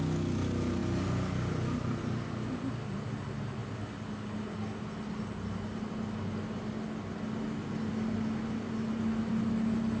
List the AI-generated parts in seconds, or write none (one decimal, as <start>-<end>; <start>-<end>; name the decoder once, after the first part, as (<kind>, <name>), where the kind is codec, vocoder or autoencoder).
none